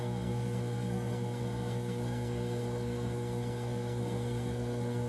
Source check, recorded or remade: remade